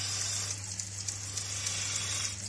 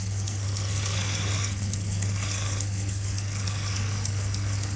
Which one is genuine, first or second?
first